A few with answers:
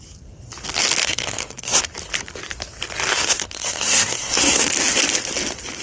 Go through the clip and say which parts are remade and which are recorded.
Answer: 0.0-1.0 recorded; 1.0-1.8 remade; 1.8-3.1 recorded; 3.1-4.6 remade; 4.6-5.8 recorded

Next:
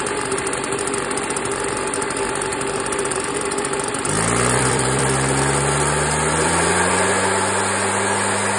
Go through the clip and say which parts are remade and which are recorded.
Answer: 0.0-2.5 recorded; 2.5-6.9 remade; 6.9-8.6 recorded

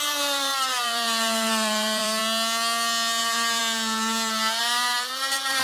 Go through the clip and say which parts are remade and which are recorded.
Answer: 0.0-2.2 remade; 2.2-3.2 recorded; 3.2-3.6 remade; 3.6-4.6 recorded; 4.6-5.6 remade

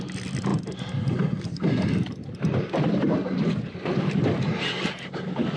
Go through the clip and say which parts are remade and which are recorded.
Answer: 0.0-5.6 recorded